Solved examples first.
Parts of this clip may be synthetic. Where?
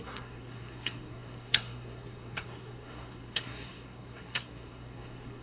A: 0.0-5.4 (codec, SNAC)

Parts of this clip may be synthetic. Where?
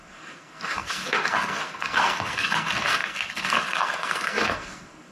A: 0.0-5.1 (codec, SNAC)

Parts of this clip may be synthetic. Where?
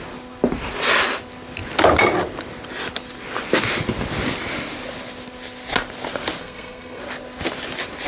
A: 6.4-7.0 (codec, SNAC)